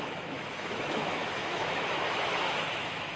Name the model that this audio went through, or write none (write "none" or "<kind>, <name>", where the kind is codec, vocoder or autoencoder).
autoencoder, DAC-VAE